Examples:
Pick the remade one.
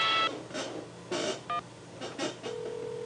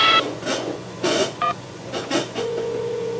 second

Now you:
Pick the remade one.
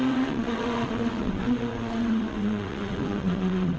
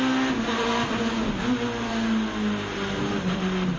first